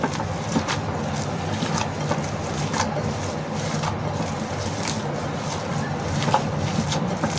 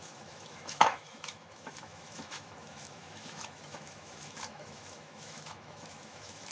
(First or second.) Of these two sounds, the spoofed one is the second